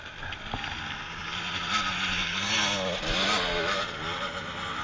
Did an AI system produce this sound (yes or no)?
no